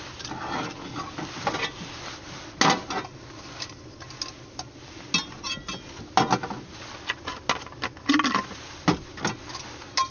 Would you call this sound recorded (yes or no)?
yes